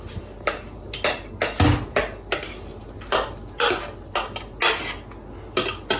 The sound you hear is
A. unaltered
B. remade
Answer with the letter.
A